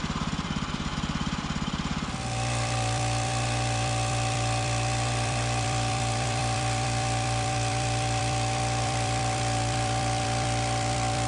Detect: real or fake fake